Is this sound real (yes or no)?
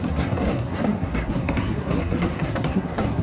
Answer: no